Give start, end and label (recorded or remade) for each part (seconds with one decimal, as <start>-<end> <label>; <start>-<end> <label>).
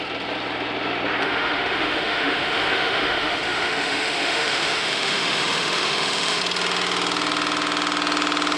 0.0-1.2 recorded; 1.2-6.4 remade; 6.4-8.6 recorded